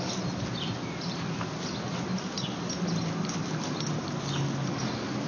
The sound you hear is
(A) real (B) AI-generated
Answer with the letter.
A